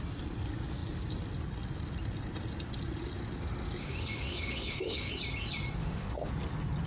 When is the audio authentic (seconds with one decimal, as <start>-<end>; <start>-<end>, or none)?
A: 0.0-3.8; 5.1-5.8; 6.3-6.9